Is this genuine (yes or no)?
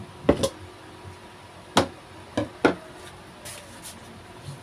yes